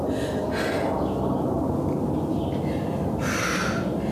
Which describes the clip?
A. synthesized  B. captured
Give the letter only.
B